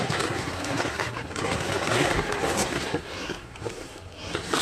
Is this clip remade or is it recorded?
remade